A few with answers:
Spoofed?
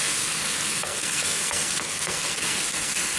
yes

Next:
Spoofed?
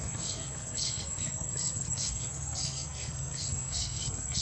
yes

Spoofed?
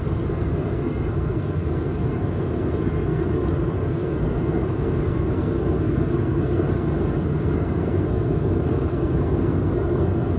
yes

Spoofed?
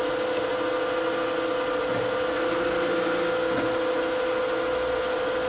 no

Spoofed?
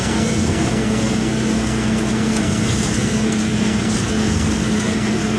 yes